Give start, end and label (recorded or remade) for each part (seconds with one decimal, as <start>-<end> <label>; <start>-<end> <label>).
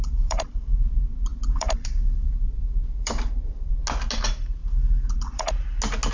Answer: 0.0-0.7 remade; 0.7-1.3 recorded; 1.3-3.7 remade; 3.7-6.1 recorded